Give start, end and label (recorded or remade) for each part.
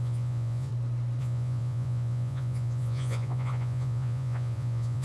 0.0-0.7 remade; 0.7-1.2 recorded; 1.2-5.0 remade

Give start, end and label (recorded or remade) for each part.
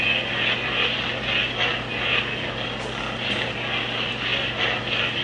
0.0-5.2 recorded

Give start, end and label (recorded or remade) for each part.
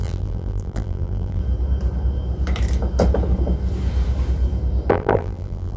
0.0-1.4 remade; 1.4-4.9 recorded; 4.9-5.8 remade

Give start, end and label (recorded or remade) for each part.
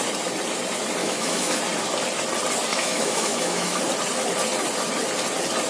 0.0-1.0 recorded; 1.0-1.6 remade; 1.6-2.7 recorded; 2.7-3.8 remade; 3.8-5.7 recorded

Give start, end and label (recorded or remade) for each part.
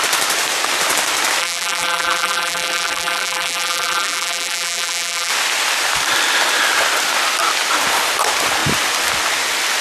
0.0-1.4 recorded; 1.4-5.3 remade; 5.3-9.8 recorded